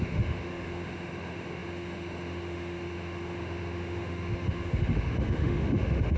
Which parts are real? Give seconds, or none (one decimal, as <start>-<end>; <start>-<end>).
none

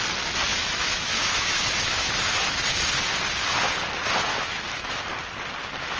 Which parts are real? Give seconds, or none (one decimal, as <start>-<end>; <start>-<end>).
0.0-0.5; 2.6-4.3; 5.0-6.0

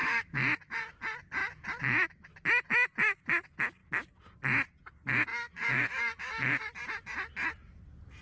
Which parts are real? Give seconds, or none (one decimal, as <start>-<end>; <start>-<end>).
0.8-1.4; 2.3-5.3; 6.6-8.2

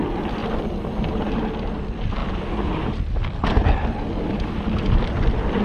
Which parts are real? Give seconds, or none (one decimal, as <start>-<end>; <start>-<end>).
0.0-5.6

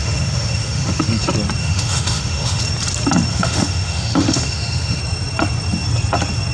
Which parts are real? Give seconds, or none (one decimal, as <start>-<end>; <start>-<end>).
1.2-1.6; 2.6-3.3; 5.0-6.5

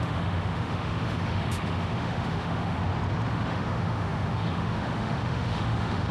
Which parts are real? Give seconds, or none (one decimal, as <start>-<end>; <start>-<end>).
2.8-3.3